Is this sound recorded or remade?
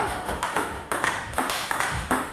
remade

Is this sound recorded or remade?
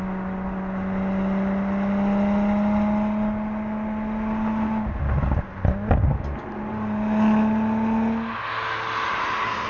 recorded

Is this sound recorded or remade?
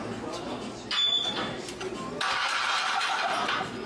recorded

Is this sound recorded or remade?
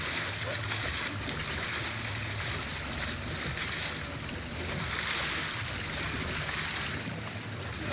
recorded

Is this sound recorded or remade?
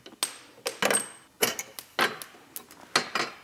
recorded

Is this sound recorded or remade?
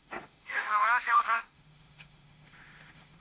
remade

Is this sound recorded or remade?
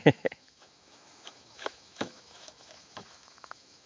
remade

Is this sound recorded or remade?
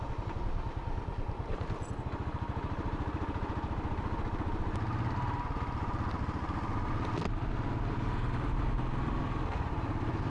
recorded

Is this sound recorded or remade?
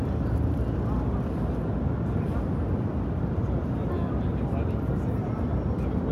recorded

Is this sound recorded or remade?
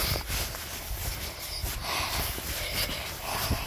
recorded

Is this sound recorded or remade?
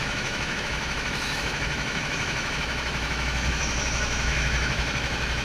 remade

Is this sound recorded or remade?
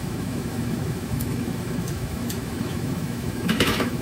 remade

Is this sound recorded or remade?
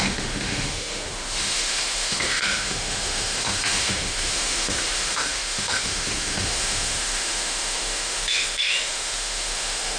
remade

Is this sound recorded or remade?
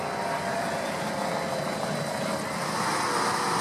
recorded